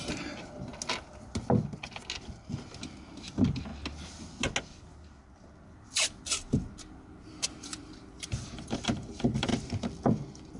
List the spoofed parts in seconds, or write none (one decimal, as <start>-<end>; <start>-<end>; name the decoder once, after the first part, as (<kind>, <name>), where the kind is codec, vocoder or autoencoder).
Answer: 0.0-0.7 (vocoder, BigVGAN v2); 3.1-3.7; 7.2-9.5

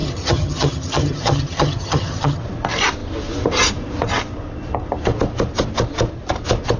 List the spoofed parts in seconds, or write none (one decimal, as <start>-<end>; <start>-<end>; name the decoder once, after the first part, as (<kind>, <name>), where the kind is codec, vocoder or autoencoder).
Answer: 0.0-2.4 (vocoder, HiFi-GAN)

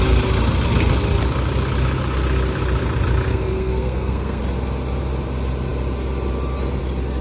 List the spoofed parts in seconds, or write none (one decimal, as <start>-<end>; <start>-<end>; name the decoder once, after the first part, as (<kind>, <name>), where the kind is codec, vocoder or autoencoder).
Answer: 3.3-4.4 (codec, SNAC)

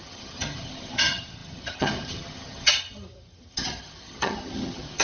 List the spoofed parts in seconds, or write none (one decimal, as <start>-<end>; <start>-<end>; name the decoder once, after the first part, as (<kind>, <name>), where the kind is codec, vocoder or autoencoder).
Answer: 0.0-5.0 (vocoder, HiFi-GAN)

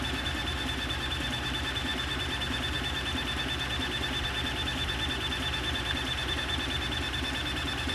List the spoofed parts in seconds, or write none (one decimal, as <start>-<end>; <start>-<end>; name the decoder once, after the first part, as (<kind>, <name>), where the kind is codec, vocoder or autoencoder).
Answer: none